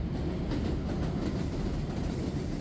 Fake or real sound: real